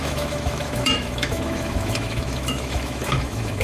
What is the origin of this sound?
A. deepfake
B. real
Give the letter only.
A